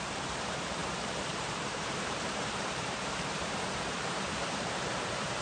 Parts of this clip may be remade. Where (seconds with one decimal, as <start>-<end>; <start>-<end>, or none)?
0.0-5.4